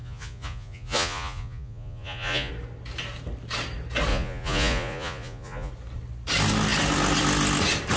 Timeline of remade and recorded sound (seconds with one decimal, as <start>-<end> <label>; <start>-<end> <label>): 0.0-2.5 remade; 2.5-4.1 recorded; 4.1-5.7 remade; 5.7-8.0 recorded